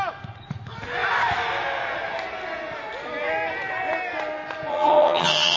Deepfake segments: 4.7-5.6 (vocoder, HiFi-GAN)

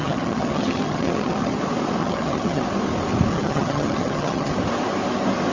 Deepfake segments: 0.0-1.6 (vocoder, HiFi-GAN); 2.0-2.6; 3.3-4.5

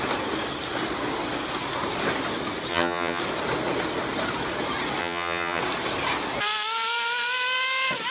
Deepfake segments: 2.7-3.2 (vocoder, HiFi-GAN); 5.0-5.6